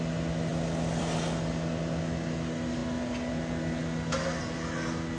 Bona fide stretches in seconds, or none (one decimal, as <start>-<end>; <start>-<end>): 0.0-5.2